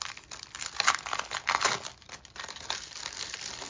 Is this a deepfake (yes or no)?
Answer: no